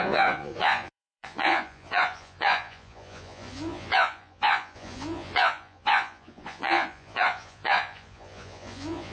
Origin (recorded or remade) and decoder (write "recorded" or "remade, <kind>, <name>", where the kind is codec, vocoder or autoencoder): remade, vocoder, Vocos